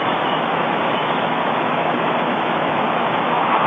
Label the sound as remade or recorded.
remade